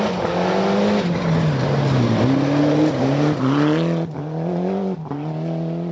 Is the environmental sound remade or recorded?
recorded